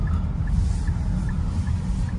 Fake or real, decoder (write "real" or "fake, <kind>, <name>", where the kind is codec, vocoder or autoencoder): real